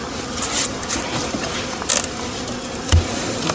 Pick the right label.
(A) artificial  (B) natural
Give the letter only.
A